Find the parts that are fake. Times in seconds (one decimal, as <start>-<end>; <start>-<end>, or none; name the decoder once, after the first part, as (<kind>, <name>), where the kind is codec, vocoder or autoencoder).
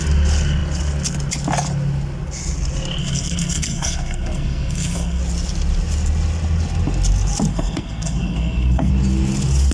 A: 3.0-5.2 (codec, SNAC); 7.5-8.9